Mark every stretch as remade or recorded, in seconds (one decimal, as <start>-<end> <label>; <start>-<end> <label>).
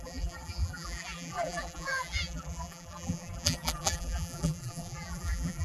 0.0-5.6 remade